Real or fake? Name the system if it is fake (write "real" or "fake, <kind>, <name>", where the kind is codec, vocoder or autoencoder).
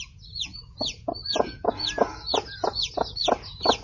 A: fake, vocoder, Vocos